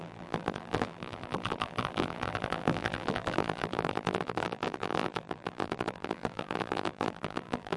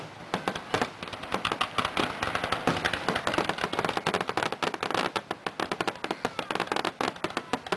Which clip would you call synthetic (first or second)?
first